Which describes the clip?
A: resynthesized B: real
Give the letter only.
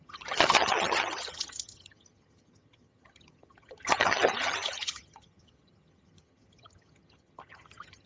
A